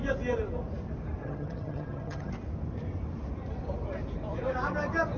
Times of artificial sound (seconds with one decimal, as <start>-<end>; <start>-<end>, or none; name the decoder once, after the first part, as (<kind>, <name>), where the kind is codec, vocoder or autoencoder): 1.2-2.3 (vocoder, HiFi-GAN)